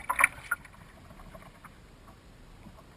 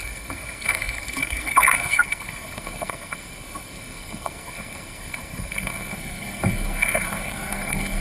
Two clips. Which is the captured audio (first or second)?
first